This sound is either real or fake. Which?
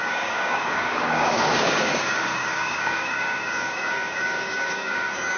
fake